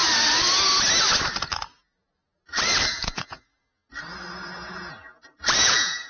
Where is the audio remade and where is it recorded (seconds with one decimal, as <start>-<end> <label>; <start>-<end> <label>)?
0.0-2.9 recorded; 2.9-3.8 remade; 3.8-5.6 recorded; 5.6-6.1 remade